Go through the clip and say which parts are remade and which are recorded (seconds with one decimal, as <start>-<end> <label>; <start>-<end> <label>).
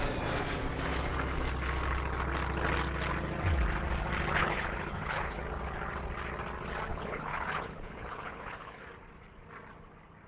0.0-4.4 recorded; 4.4-5.4 remade; 5.4-6.9 recorded; 6.9-8.8 remade; 8.8-10.3 recorded